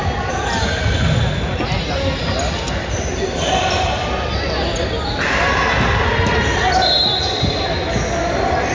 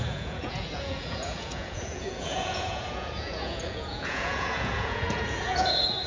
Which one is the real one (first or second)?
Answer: first